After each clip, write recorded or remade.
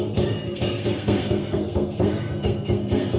remade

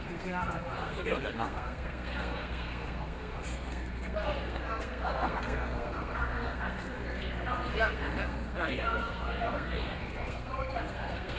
remade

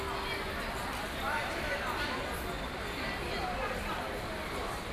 recorded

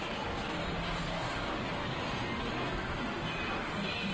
recorded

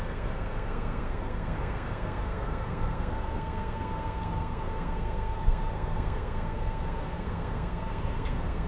remade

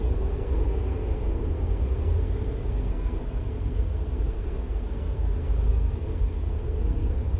remade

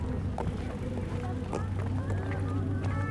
recorded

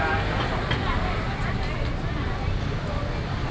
recorded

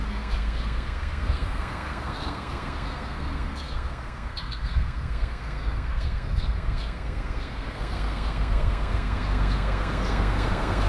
remade